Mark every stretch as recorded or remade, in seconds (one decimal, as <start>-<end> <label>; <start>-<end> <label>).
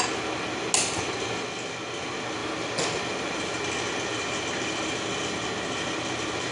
0.0-2.4 recorded; 2.4-3.6 remade; 3.6-4.1 recorded; 4.1-5.4 remade; 5.4-6.5 recorded